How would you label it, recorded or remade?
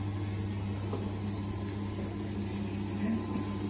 recorded